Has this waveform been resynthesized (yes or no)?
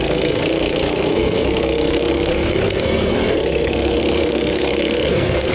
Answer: yes